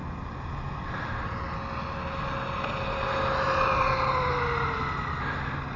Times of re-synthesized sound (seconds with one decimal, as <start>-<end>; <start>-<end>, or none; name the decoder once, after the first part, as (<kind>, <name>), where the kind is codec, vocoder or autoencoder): none